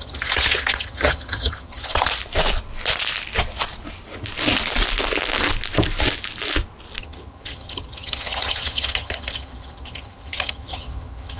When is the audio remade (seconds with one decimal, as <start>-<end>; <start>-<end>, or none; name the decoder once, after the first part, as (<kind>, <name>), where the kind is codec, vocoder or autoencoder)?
0.0-2.1 (vocoder, HiFi-GAN); 7.0-11.4